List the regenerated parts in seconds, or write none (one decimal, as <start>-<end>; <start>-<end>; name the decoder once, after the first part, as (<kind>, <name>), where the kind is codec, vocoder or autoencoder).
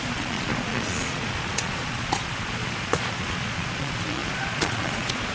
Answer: 0.0-5.3 (vocoder, Vocos)